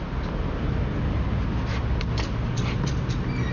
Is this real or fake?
real